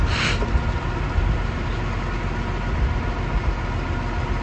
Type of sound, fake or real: real